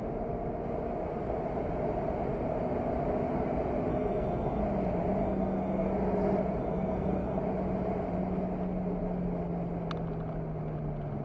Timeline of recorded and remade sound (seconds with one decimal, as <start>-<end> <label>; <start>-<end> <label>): 0.0-3.9 recorded; 3.9-4.6 remade; 4.6-5.2 recorded; 5.2-5.9 remade; 5.9-6.6 recorded; 6.6-7.4 remade; 7.4-11.2 recorded